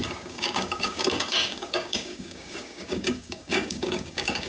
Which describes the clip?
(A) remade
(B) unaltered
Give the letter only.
A